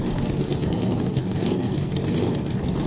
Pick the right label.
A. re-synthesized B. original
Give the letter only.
A